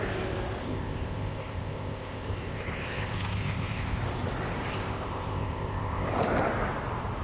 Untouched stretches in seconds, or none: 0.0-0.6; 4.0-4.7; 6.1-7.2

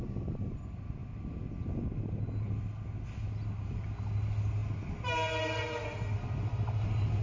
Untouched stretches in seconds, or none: 0.0-7.2

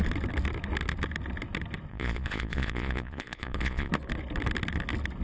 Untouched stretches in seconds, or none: 0.0-1.9; 3.9-5.2